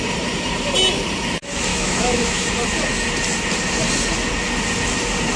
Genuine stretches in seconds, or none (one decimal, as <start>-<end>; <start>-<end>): 0.0-1.7; 2.5-5.4